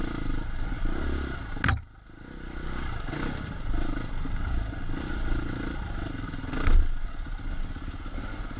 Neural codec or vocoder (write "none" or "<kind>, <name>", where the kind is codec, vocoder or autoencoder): none